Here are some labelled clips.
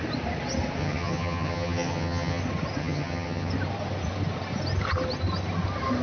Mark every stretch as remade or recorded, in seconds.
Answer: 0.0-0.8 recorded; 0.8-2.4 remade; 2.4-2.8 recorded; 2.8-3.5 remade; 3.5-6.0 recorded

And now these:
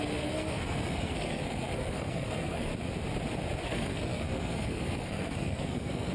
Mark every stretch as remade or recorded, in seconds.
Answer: 0.0-2.7 remade; 2.7-3.6 recorded; 3.6-6.1 remade

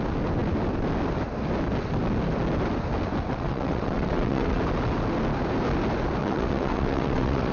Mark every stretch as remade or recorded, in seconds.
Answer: 0.0-3.3 recorded; 3.3-4.6 remade; 4.6-6.2 recorded; 6.2-7.5 remade

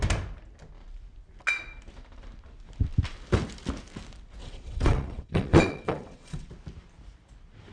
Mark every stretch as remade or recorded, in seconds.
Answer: 0.0-4.4 recorded; 4.4-6.5 remade; 6.5-7.7 recorded

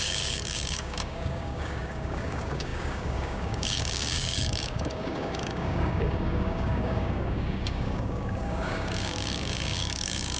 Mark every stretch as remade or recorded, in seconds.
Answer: 0.0-10.4 remade

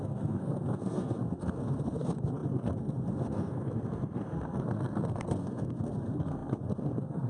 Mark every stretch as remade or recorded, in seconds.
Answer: 0.0-7.3 remade

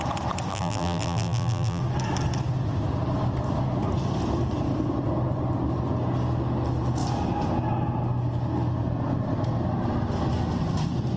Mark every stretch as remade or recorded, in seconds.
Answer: 0.0-0.5 recorded; 0.5-1.8 remade; 1.8-11.2 recorded

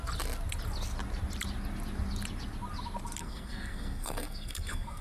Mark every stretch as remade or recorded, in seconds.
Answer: 0.0-3.2 recorded; 3.2-5.0 remade